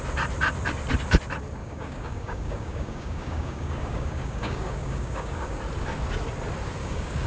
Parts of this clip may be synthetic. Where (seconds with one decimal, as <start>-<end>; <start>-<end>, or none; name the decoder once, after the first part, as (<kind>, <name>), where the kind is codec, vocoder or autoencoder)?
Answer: 1.6-5.6 (codec, DAC); 6.8-7.3